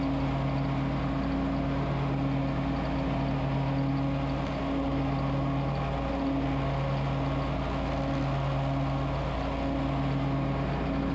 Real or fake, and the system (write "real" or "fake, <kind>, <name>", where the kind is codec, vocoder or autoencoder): real